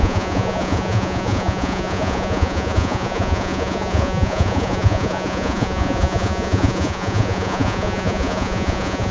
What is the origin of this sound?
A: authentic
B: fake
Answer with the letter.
B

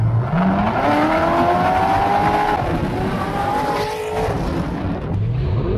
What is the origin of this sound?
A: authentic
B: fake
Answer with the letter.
A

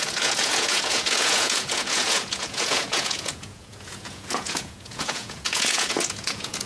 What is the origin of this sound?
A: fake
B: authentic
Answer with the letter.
A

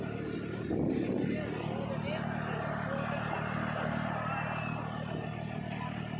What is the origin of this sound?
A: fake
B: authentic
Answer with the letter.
B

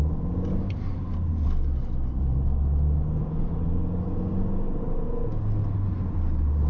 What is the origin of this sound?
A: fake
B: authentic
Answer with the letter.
B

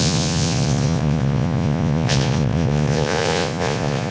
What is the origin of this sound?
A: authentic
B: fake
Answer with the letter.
B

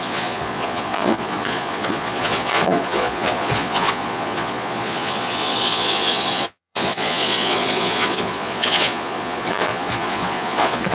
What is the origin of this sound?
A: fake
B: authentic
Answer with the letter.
A